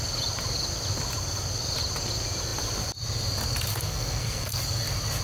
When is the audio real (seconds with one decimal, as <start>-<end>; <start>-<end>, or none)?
0.0-3.7; 4.6-5.2